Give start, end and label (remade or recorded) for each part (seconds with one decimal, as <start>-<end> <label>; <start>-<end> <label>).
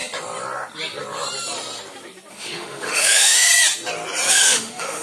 0.0-2.3 recorded; 2.3-3.5 remade; 3.5-4.3 recorded; 4.3-5.0 remade